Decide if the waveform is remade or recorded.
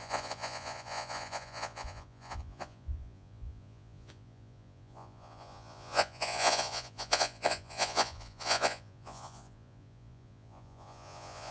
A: remade